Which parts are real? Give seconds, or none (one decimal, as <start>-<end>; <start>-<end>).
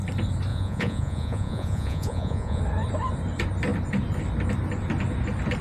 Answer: 0.0-0.5; 2.6-5.6